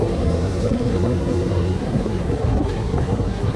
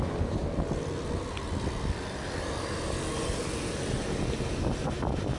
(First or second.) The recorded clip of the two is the second